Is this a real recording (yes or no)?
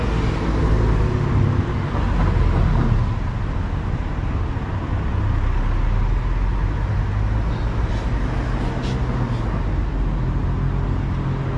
yes